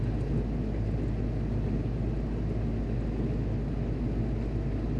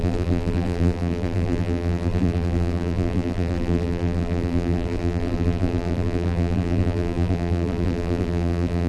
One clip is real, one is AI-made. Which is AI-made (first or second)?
second